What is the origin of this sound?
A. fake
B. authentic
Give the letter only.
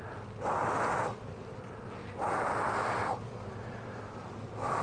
B